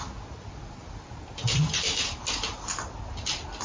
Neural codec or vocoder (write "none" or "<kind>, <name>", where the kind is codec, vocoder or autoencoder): none